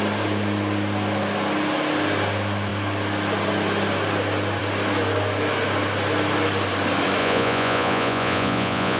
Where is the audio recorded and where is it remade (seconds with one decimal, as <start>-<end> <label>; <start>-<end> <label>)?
0.0-7.2 recorded; 7.2-9.0 remade